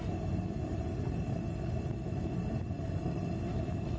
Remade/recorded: recorded